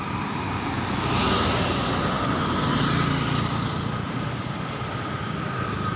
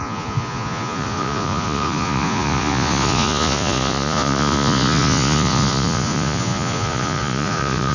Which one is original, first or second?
first